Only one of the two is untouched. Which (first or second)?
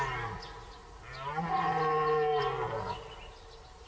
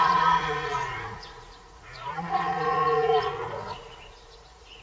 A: first